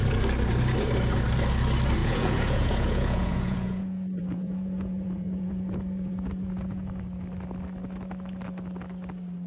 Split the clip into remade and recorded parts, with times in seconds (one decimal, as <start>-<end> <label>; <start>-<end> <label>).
0.0-2.0 recorded; 2.0-7.0 remade; 7.0-9.5 recorded

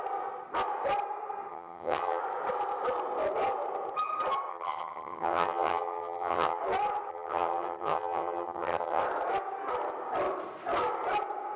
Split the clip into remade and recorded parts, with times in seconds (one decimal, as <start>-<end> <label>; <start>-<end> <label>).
0.0-1.5 recorded; 1.5-2.2 remade; 2.2-4.5 recorded; 4.5-6.6 remade; 6.6-7.1 recorded; 7.1-9.0 remade; 9.0-11.6 recorded